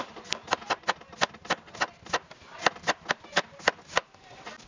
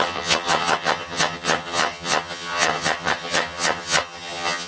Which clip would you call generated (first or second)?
second